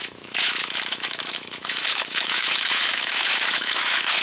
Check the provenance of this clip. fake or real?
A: fake